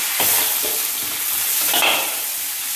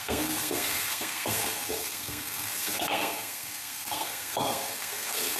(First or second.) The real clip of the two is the first